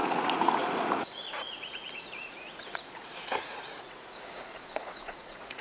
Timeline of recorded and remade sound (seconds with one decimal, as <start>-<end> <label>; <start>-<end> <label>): 0.0-5.6 remade